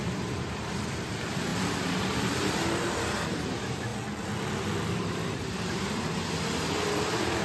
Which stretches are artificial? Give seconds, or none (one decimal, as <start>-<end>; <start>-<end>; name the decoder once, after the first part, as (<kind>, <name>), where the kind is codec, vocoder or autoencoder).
0.0-3.9 (vocoder, BigVGAN v2); 5.0-7.4